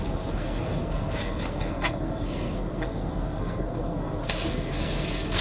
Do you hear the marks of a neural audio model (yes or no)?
yes